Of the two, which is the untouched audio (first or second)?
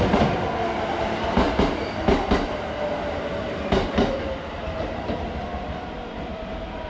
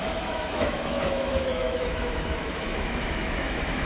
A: first